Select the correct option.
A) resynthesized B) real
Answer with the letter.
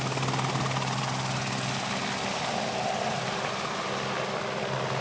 B